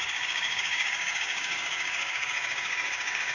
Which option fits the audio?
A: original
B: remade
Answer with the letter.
B